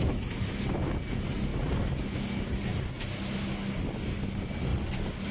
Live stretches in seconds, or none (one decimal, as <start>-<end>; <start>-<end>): 0.0-5.3